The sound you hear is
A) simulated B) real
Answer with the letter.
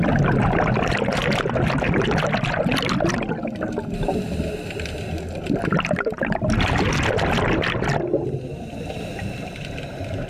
B